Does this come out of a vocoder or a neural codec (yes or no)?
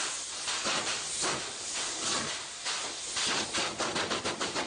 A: no